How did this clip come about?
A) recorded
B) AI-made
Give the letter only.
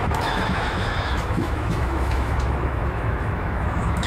B